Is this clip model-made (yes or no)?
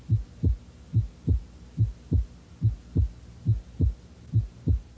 no